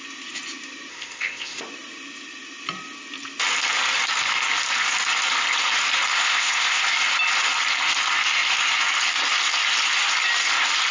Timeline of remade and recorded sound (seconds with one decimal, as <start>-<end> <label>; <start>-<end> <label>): 0.0-0.9 recorded; 0.9-1.6 remade; 1.6-6.1 recorded; 6.1-6.8 remade; 6.8-10.9 recorded